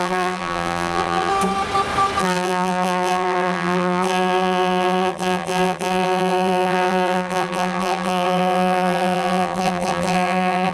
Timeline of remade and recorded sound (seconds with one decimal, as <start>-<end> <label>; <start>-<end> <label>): 0.0-1.3 remade; 1.3-2.2 recorded; 2.2-10.7 remade